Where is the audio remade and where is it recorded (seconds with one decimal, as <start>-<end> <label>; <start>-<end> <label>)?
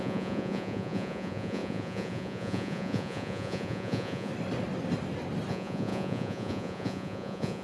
0.0-4.3 remade; 4.3-5.5 recorded; 5.5-7.6 remade